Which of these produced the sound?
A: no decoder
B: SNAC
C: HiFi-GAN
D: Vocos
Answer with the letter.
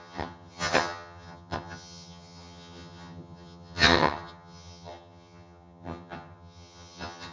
C